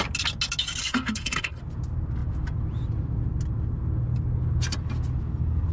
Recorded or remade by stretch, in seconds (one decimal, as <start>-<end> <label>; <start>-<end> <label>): 0.0-0.8 recorded; 0.8-1.6 remade; 1.6-5.7 recorded

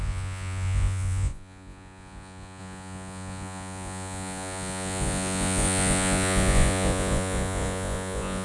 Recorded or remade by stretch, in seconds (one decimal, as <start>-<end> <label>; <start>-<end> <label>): 0.0-8.4 remade

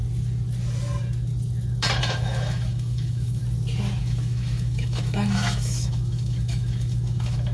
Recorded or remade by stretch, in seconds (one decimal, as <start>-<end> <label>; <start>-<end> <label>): 0.0-2.0 recorded; 2.0-3.4 remade; 3.4-4.0 recorded; 4.0-7.5 remade

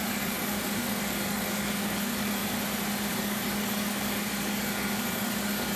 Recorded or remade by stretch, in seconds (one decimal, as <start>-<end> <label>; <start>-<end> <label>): 0.0-2.4 remade; 2.4-3.1 recorded; 3.1-5.8 remade

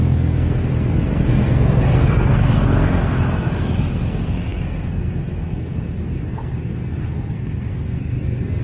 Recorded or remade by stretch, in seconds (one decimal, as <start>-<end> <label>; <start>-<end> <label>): 0.0-8.6 remade

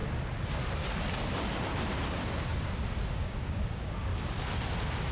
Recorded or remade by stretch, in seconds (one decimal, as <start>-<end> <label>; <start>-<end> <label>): 0.0-3.1 recorded; 3.1-4.1 remade; 4.1-5.1 recorded

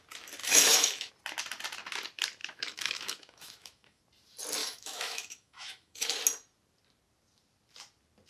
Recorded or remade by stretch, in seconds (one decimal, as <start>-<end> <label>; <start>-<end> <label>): 0.0-0.4 recorded; 0.4-1.1 remade; 1.1-2.4 recorded; 2.4-4.0 remade; 4.0-4.6 recorded; 4.6-6.2 remade; 6.2-8.3 recorded

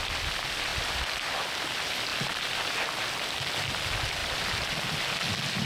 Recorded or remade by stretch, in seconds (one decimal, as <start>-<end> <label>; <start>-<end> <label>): 0.0-0.7 recorded; 0.7-1.3 remade; 1.3-4.2 recorded; 4.2-4.8 remade; 4.8-5.7 recorded